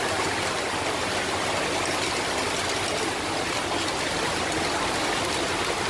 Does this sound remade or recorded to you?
recorded